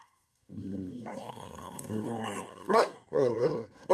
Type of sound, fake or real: fake